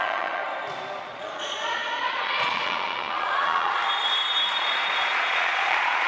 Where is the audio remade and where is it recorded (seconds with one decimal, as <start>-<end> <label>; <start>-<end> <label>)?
0.0-0.4 remade; 0.4-1.0 recorded; 1.0-3.8 remade; 3.8-4.5 recorded; 4.5-6.1 remade

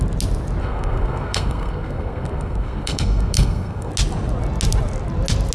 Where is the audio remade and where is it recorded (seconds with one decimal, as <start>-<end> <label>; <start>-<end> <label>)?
0.0-0.6 recorded; 0.6-3.9 remade; 3.9-5.5 recorded

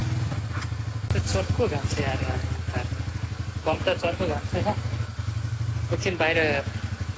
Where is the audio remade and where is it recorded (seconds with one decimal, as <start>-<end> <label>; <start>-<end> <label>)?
0.0-7.2 recorded

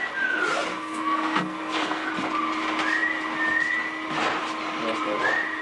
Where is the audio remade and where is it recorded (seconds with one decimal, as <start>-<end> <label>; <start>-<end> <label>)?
0.0-0.7 recorded; 0.7-2.1 remade; 2.1-5.6 recorded

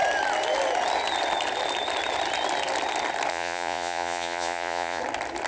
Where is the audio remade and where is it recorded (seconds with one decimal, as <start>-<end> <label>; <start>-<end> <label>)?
0.0-3.3 recorded; 3.3-5.0 remade; 5.0-5.5 recorded

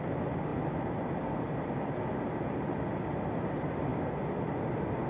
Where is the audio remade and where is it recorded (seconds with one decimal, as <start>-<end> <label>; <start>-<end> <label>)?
0.0-5.1 recorded

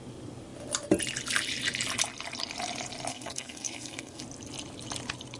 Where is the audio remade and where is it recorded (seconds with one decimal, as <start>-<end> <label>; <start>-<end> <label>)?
0.0-3.1 recorded; 3.1-4.2 remade; 4.2-5.4 recorded

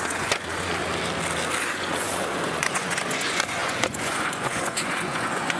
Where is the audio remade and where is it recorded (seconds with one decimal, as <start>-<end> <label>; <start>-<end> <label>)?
0.0-0.8 remade; 0.8-1.6 recorded; 1.6-5.6 remade